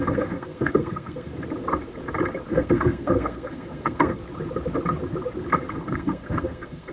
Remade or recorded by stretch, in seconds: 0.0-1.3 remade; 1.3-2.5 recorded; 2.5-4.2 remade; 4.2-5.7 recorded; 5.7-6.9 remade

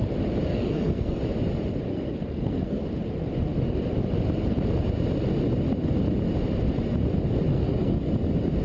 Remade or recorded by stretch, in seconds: 0.0-0.5 recorded; 0.5-1.2 remade; 1.2-1.9 recorded; 1.9-2.8 remade; 2.8-7.5 recorded; 7.5-8.1 remade; 8.1-8.6 recorded

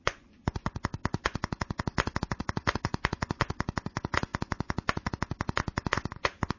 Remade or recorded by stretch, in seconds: 0.0-6.6 remade

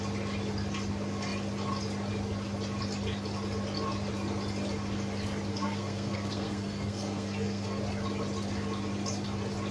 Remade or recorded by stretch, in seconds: 0.0-5.5 recorded; 5.5-7.8 remade; 7.8-9.7 recorded

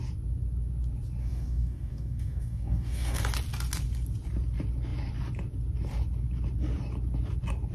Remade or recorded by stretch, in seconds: 0.0-1.2 recorded; 1.2-3.2 remade; 3.2-7.7 recorded

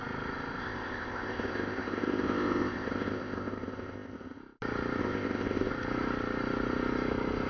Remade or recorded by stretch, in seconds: 0.0-0.6 recorded; 0.6-4.4 remade; 4.4-5.0 recorded; 5.0-5.7 remade; 5.7-7.5 recorded